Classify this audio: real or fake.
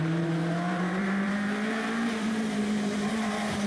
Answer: fake